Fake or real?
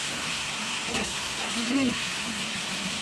fake